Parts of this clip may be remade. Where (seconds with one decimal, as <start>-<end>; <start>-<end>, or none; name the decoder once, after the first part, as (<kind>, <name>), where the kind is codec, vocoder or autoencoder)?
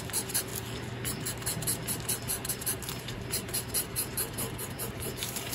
0.0-0.5 (vocoder, BigVGAN v2); 2.5-5.5